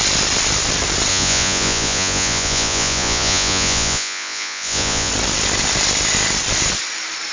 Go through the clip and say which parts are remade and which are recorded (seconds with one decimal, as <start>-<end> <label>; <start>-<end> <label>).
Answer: 0.0-1.1 recorded; 1.1-5.1 remade; 5.1-7.3 recorded